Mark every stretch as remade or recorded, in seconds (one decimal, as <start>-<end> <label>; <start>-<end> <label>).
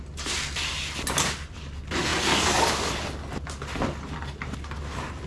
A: 0.0-5.3 recorded